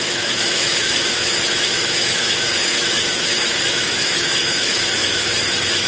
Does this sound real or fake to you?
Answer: fake